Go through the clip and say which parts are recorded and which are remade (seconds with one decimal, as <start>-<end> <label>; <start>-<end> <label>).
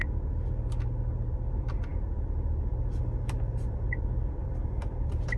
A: 0.0-1.5 recorded; 1.5-5.4 remade